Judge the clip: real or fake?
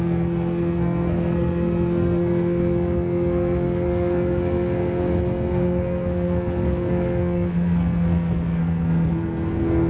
fake